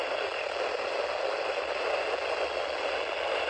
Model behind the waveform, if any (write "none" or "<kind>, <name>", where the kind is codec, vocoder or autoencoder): none